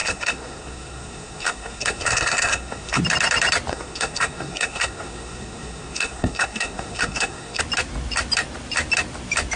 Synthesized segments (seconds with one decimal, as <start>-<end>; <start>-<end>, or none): 0.0-3.0; 3.7-7.6